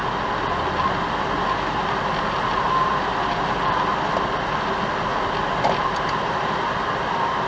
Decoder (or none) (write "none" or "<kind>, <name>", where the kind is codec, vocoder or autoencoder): none